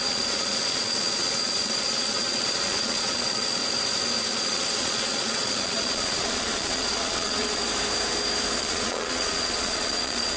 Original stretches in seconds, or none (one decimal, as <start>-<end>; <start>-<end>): 3.6-4.3; 7.6-8.6